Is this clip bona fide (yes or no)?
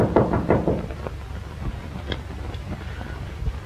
no